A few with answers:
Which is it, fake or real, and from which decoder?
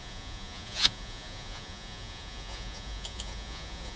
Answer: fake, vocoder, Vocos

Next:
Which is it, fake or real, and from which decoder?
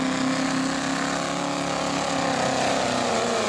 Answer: real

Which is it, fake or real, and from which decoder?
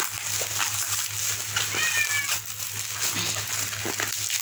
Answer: real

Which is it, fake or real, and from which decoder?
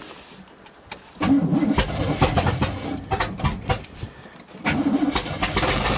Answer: real